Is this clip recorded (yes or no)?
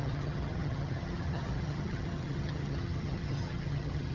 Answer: no